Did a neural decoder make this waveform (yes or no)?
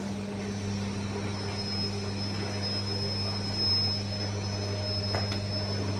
no